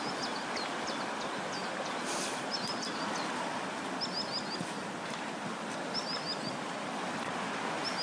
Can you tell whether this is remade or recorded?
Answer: recorded